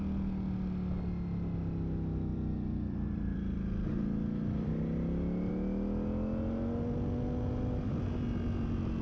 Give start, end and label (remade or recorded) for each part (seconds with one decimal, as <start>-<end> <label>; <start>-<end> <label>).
0.0-2.3 recorded; 2.3-4.7 remade; 4.7-9.0 recorded